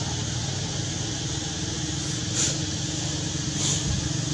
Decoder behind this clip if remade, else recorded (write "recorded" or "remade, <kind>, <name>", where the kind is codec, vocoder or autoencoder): recorded